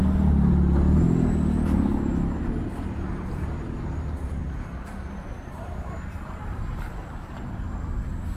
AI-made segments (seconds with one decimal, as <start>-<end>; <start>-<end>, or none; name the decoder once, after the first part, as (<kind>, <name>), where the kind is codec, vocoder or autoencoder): 4.4-7.4 (vocoder, BigVGAN v2)